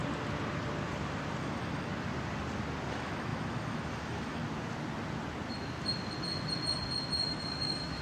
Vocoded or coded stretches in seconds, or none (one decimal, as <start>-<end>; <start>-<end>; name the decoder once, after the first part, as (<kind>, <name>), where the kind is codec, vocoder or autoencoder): 1.4-1.9 (autoencoder, DAC-VAE); 2.9-4.4; 7.3-8.0